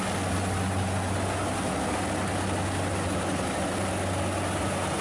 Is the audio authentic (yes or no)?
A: yes